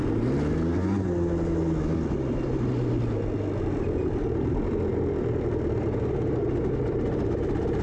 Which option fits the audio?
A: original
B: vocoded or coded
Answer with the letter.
A